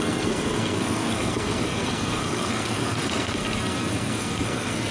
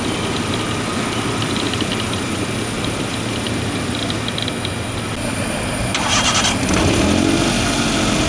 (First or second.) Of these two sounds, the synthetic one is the first